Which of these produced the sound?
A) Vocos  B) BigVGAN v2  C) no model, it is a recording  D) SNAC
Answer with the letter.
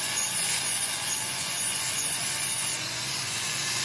A